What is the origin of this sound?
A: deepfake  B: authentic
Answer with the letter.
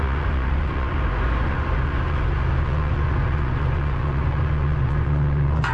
A